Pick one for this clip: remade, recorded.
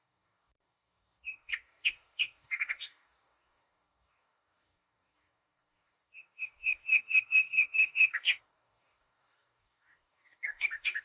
remade